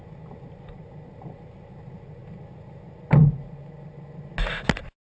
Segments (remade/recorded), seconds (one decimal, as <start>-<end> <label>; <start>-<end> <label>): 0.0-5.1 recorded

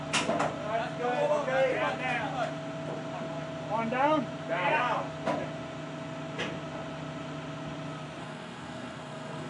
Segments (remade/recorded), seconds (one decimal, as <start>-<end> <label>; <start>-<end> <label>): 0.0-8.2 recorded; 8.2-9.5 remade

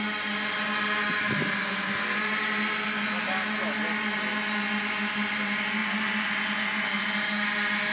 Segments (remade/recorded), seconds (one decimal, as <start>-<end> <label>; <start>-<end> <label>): 0.0-7.9 recorded

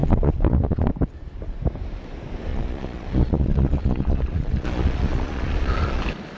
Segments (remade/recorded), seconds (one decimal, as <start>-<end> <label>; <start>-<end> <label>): 0.0-0.9 remade; 0.9-2.5 recorded; 2.5-6.0 remade; 6.0-6.4 recorded

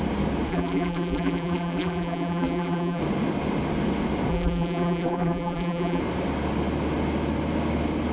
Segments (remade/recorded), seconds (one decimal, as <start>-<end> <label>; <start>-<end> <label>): 0.0-0.5 recorded; 0.5-3.0 remade; 3.0-4.3 recorded; 4.3-6.0 remade; 6.0-8.1 recorded

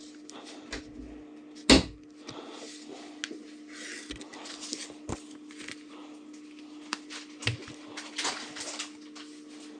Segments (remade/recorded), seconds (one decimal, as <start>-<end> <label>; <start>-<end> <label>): 0.0-9.8 recorded

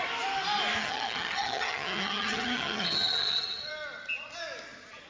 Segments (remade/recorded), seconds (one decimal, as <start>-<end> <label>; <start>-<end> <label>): 0.0-0.8 recorded; 0.8-3.7 remade; 3.7-5.1 recorded